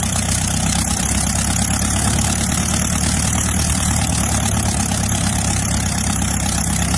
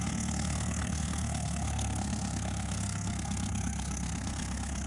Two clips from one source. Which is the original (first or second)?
first